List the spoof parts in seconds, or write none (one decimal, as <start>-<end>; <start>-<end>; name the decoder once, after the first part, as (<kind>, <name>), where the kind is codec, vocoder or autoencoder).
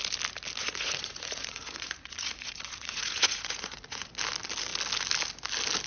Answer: 0.6-4.1 (vocoder, Vocos)